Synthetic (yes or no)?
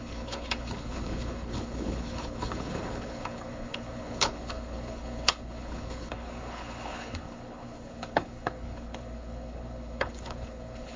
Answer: yes